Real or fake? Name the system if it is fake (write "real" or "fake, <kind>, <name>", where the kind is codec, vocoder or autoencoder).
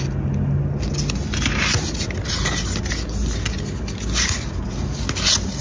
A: real